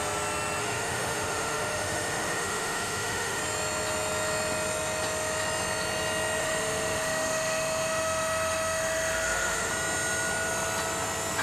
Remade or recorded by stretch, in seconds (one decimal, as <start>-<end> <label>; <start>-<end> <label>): 0.0-0.6 recorded; 0.6-3.4 remade; 3.4-6.4 recorded; 6.4-9.7 remade; 9.7-11.4 recorded